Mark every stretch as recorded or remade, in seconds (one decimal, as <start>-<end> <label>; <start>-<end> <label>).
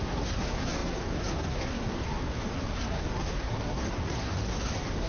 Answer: 0.0-5.1 remade